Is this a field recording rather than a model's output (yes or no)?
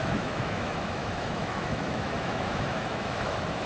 no